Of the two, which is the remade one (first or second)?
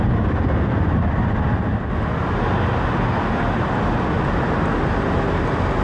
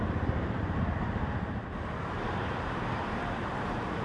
second